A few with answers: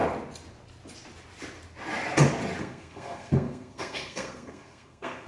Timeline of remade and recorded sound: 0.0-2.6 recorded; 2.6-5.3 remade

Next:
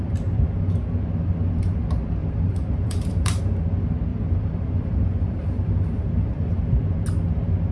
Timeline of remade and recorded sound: 0.0-2.2 recorded; 2.2-3.4 remade; 3.4-4.1 recorded; 4.1-6.7 remade; 6.7-7.7 recorded

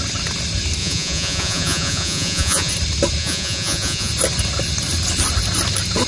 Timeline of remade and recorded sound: 0.0-0.8 recorded; 0.8-2.7 remade; 2.7-3.2 recorded; 3.2-4.1 remade; 4.1-6.1 recorded

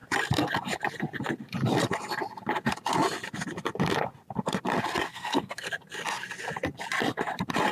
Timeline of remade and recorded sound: 0.0-5.1 recorded; 5.1-5.7 remade; 5.7-7.7 recorded

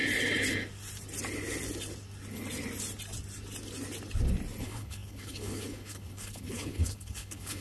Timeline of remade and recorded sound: 0.0-4.6 recorded; 4.6-7.6 remade

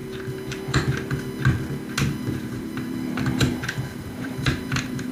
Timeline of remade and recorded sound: 0.0-2.2 recorded; 2.2-5.1 remade

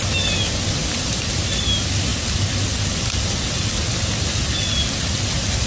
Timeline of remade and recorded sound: 0.0-5.7 recorded